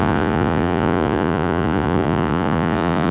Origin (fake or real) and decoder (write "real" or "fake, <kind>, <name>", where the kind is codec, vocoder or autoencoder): fake, vocoder, Vocos